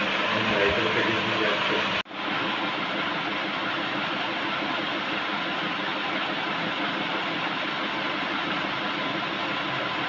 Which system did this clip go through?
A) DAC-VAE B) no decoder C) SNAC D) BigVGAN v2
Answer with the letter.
B